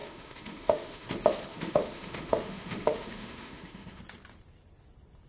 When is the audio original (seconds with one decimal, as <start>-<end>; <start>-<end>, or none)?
1.1-1.5; 4.0-5.3